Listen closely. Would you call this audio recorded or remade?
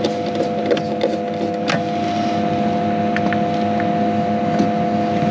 recorded